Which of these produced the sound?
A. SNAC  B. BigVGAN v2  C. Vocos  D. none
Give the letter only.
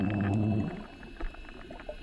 B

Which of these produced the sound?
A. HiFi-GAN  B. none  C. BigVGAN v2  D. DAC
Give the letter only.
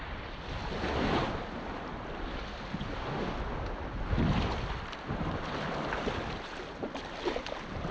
B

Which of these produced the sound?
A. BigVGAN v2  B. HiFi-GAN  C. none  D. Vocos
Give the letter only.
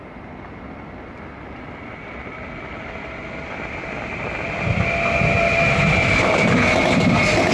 C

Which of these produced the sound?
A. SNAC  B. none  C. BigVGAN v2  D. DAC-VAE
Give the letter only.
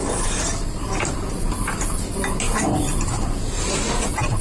B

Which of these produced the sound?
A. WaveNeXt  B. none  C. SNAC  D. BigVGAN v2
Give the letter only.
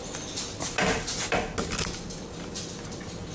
B